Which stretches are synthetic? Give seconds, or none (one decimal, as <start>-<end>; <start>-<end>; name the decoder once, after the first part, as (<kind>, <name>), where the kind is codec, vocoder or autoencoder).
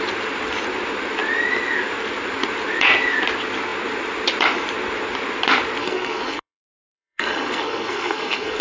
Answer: 5.8-8.6 (codec, SNAC)